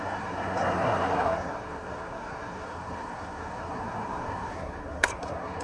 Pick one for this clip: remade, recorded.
remade